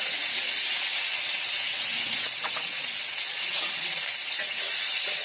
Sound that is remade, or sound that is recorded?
remade